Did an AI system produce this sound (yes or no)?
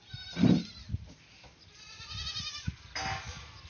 no